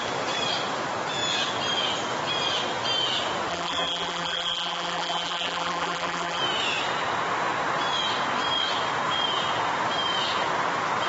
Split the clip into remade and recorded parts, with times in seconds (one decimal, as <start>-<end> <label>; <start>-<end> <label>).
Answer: 0.0-3.5 recorded; 3.5-6.4 remade; 6.4-11.1 recorded